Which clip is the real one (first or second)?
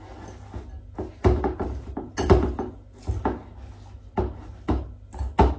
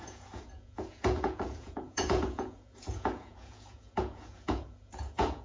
first